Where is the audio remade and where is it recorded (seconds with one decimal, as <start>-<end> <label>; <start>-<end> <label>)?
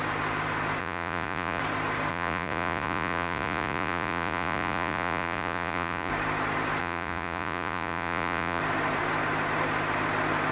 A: 0.0-0.8 recorded; 0.8-1.6 remade; 1.6-2.1 recorded; 2.1-6.1 remade; 6.1-6.8 recorded; 6.8-8.6 remade; 8.6-10.5 recorded